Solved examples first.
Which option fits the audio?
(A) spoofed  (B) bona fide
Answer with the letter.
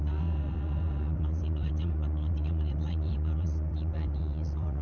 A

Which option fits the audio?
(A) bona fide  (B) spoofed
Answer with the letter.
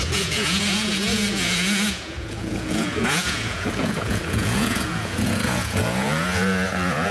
B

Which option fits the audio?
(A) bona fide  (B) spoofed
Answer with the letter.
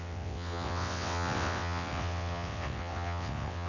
B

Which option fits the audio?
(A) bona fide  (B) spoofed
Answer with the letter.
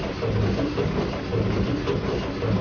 A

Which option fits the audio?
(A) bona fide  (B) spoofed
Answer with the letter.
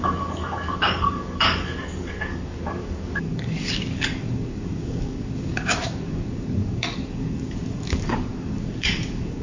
B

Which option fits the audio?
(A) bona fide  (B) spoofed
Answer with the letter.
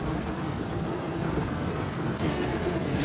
B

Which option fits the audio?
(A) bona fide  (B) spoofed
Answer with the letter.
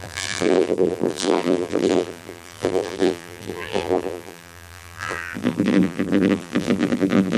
B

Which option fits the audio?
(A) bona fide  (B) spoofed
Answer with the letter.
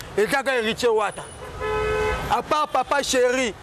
A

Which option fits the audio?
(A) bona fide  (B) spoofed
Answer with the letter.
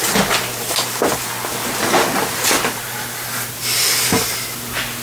A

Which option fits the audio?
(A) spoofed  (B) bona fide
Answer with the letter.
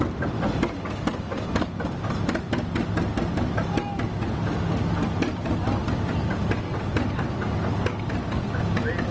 B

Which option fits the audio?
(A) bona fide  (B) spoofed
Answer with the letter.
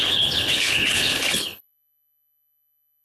B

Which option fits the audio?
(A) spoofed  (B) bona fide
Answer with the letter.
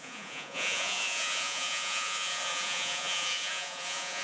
A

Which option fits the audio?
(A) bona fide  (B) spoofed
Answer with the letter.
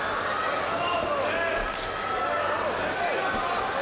A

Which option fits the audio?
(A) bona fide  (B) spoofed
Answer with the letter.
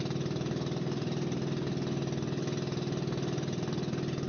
A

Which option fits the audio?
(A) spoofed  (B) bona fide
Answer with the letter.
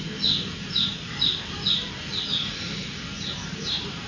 B